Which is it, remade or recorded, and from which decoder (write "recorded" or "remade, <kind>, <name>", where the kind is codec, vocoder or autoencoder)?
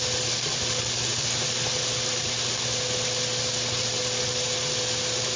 recorded